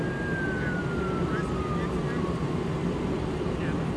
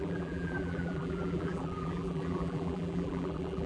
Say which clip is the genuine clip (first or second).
first